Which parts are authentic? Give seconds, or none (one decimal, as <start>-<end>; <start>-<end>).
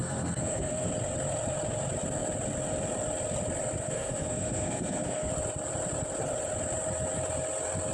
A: 0.9-3.8; 5.3-7.9